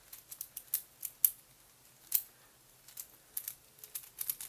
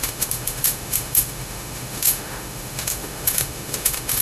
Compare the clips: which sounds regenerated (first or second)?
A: second